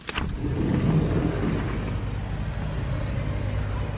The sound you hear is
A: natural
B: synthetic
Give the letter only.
A